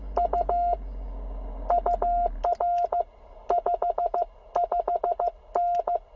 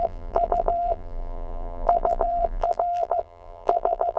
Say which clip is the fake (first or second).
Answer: second